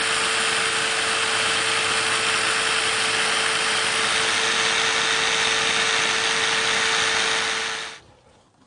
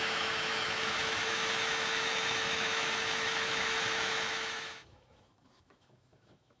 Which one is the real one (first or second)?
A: first